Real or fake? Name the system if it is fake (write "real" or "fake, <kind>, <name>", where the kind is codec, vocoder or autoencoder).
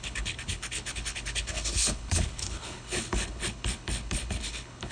fake, codec, HILCodec